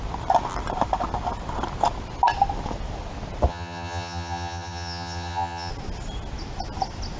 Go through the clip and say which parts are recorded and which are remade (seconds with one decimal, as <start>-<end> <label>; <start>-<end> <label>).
0.0-3.5 recorded; 3.5-5.7 remade; 5.7-7.2 recorded